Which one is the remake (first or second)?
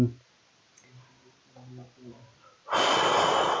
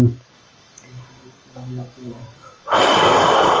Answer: second